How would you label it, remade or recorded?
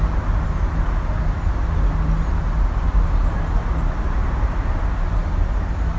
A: recorded